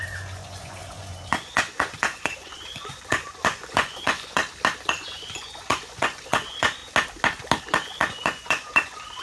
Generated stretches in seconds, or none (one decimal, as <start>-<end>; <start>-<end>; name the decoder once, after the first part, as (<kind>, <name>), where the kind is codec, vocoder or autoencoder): 0.0-4.4 (vocoder, Vocos); 4.9-6.8; 7.6-9.2